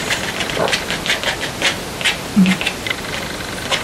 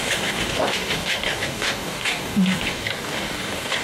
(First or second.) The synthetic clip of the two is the second